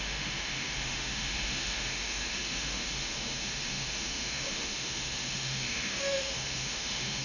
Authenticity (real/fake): fake